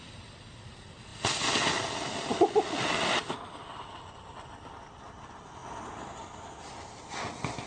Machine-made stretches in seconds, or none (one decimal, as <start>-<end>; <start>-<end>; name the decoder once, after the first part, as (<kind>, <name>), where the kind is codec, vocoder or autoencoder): none